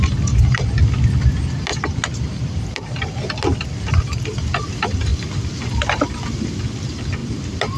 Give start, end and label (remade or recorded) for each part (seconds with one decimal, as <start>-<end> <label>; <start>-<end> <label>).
0.0-7.8 recorded